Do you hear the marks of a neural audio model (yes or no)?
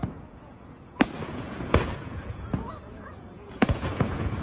yes